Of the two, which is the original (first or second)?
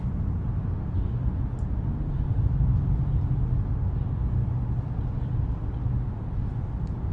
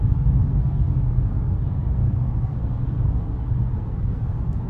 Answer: first